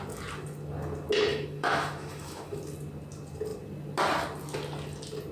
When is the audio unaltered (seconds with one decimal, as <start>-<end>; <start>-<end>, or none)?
0.0-1.3; 2.6-5.3